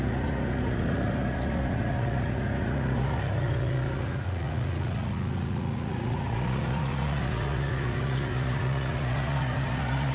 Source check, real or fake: fake